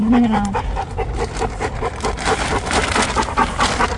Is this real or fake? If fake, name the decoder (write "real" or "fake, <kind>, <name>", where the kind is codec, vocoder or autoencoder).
fake, vocoder, BigVGAN v2